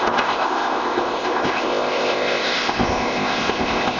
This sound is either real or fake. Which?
fake